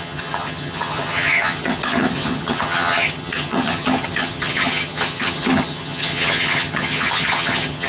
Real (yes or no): no